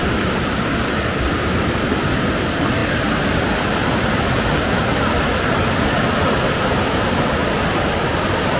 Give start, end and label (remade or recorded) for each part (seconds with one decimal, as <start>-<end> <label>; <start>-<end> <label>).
0.0-8.6 recorded